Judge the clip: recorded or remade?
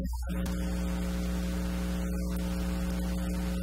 recorded